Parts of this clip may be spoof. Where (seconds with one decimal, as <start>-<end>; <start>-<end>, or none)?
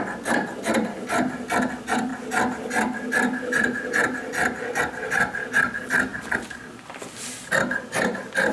none